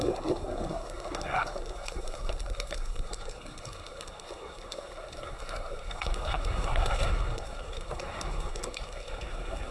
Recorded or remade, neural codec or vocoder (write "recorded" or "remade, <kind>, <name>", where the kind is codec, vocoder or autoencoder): remade, codec, SNAC